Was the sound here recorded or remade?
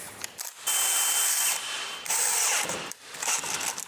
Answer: remade